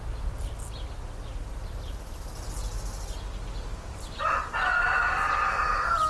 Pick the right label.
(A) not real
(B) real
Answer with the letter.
B